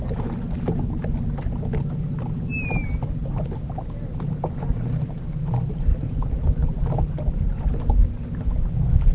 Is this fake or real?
real